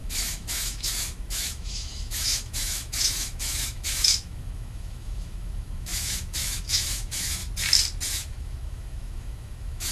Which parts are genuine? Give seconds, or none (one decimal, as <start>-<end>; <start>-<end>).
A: 7.4-8.1

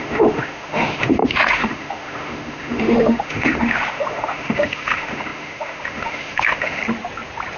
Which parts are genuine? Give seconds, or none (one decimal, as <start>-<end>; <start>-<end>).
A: 6.8-7.6

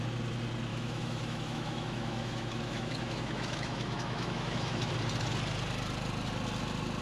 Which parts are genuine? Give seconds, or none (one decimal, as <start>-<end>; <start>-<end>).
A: 0.0-0.7; 4.9-7.0

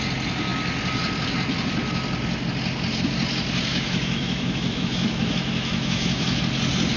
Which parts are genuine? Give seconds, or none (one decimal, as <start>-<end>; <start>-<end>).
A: 0.0-3.7; 6.4-7.0

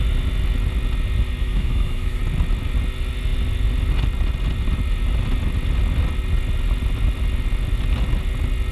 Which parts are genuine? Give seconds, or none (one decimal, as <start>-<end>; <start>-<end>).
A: 0.0-1.4; 2.2-8.7